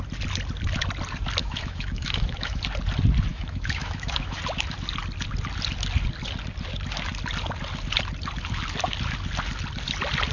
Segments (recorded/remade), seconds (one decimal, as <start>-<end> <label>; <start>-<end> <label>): 0.0-1.4 recorded; 1.4-2.6 remade; 2.6-3.3 recorded; 3.3-4.4 remade; 4.4-10.3 recorded